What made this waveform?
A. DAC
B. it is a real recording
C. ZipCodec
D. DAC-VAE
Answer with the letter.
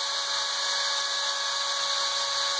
B